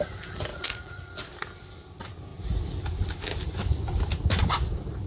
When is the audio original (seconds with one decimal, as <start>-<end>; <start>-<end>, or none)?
0.0-0.5; 1.1-5.1